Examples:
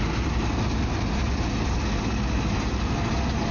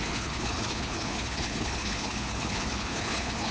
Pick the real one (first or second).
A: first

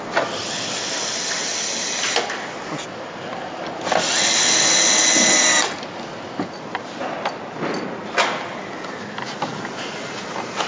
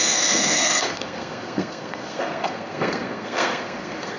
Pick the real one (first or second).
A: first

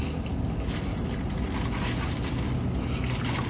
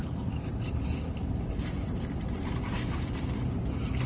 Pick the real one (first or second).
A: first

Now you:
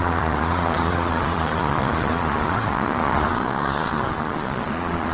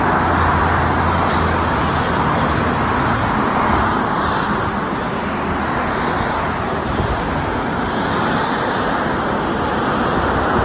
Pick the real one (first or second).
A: second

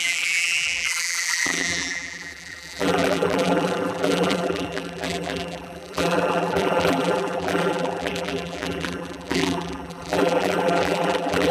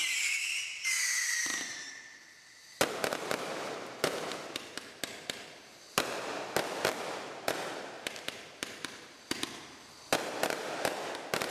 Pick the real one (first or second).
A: second